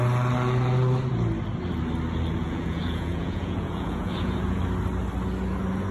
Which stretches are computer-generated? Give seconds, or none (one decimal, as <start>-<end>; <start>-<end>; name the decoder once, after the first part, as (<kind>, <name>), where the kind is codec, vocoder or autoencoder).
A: 2.4-4.6 (vocoder, Vocos)